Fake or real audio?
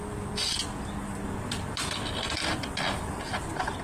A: real